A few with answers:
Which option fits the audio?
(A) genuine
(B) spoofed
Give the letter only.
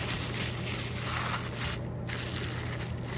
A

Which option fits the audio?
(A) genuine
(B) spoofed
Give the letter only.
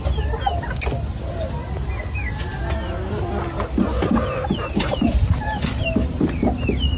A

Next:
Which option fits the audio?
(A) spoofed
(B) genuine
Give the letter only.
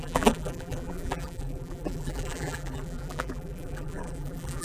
A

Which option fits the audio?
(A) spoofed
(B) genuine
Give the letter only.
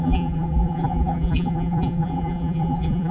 A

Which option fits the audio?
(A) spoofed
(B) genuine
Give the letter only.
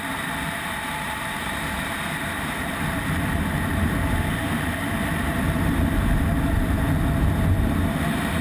A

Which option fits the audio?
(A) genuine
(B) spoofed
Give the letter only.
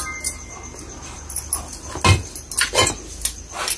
A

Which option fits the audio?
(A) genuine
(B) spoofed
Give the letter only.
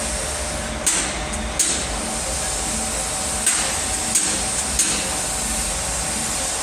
A